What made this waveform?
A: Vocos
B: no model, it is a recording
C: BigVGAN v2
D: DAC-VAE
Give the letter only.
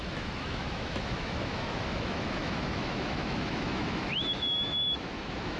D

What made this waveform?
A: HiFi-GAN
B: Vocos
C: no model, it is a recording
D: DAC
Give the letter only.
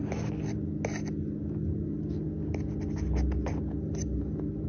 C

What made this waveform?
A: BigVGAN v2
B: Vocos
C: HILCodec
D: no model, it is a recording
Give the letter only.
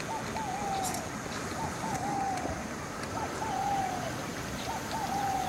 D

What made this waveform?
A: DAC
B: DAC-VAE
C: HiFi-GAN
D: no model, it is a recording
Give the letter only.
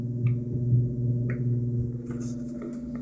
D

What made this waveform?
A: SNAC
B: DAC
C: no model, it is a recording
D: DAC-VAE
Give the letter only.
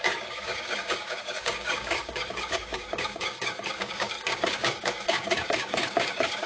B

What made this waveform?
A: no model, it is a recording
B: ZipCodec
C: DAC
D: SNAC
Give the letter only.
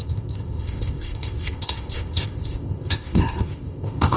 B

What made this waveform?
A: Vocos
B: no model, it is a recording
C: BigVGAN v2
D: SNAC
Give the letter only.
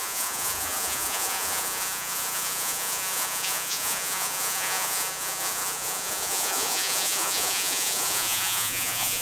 A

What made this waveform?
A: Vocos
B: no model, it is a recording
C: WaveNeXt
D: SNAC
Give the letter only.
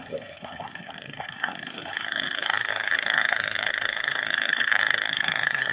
D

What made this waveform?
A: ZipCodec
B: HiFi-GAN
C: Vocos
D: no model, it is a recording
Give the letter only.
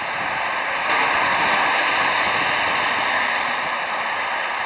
D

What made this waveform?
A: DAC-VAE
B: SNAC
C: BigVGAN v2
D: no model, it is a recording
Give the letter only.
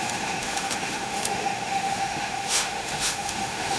A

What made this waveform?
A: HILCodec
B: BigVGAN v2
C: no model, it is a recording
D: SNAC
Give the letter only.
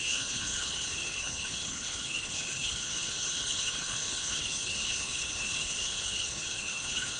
A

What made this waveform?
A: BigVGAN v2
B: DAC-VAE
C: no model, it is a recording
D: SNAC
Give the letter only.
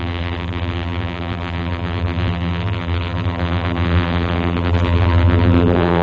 A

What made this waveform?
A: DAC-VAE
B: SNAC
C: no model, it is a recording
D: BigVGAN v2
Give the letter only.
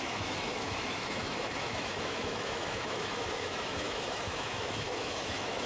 A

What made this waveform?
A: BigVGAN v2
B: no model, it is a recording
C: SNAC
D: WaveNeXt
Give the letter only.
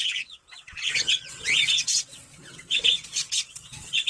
D